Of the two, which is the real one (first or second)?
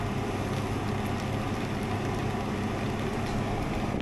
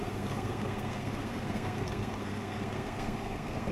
first